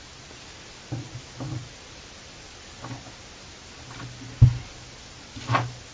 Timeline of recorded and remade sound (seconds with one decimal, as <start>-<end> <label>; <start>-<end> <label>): 0.0-5.9 recorded